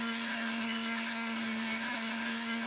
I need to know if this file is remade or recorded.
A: remade